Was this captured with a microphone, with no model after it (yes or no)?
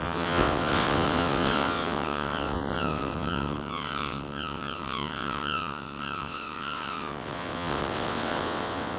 no